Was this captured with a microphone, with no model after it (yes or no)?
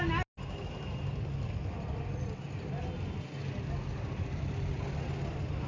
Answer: yes